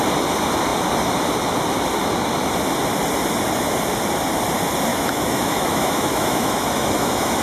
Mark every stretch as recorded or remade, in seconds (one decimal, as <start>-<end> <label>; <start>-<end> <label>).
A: 0.0-4.9 recorded; 4.9-7.4 remade